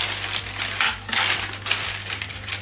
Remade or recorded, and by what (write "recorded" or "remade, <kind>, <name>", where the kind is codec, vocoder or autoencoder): recorded